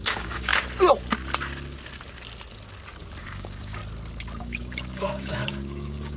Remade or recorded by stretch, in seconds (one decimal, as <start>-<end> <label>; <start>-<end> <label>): 0.0-0.5 remade; 0.5-3.2 recorded; 3.2-3.8 remade; 3.8-4.4 recorded; 4.4-6.2 remade